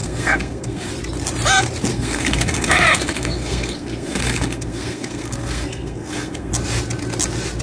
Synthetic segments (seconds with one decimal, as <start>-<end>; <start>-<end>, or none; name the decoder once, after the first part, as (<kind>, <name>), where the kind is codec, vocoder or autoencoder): 0.0-0.9 (codec, SNAC); 1.9-6.5

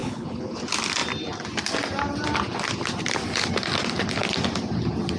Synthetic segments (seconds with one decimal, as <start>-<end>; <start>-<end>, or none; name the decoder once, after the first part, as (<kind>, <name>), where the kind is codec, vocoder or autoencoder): 0.0-0.6 (codec, HILCodec)

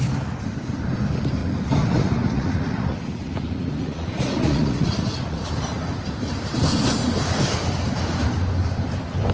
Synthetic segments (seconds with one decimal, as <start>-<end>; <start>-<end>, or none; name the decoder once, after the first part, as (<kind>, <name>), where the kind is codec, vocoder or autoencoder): 1.4-5.5 (vocoder, Vocos)

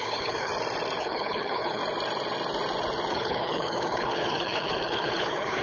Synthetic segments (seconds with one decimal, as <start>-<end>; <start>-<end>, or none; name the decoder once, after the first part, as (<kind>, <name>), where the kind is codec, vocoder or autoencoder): 0.0-0.5 (codec, HILCodec); 1.0-1.8; 3.1-5.6

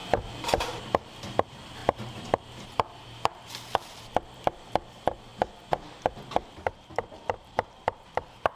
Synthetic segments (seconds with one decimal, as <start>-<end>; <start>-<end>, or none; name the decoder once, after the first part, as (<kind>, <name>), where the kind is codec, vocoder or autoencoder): 0.0-5.3 (vocoder, BigVGAN v2); 6.3-8.6